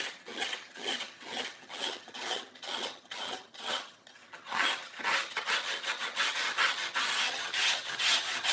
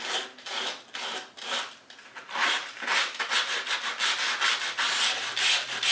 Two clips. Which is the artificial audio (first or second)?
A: first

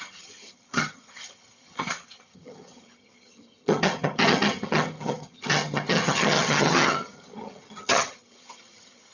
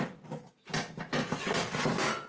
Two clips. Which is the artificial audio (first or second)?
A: first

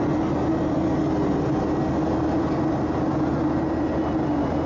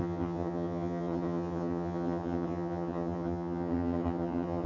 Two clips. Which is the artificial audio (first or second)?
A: second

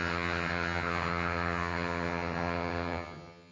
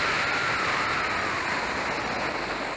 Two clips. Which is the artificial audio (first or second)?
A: first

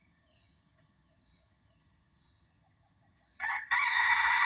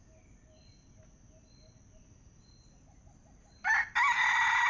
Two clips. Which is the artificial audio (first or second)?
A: first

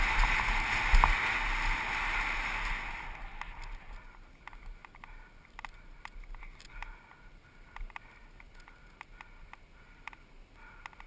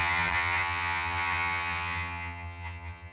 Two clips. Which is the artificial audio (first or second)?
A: second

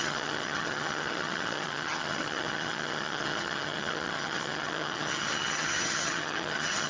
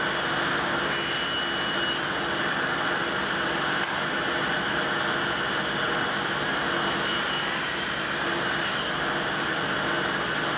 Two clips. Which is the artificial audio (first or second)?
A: first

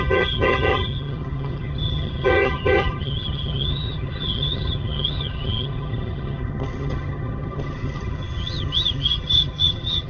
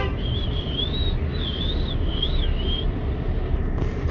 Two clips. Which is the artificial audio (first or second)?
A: first